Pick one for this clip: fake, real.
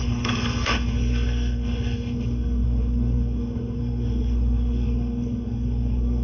fake